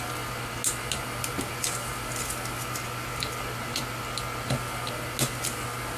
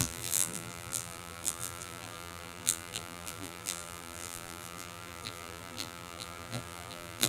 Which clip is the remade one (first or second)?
second